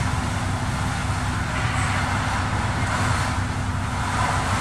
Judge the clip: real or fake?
real